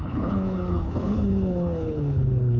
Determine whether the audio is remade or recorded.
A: remade